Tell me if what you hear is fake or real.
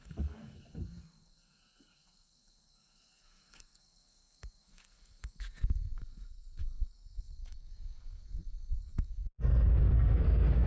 fake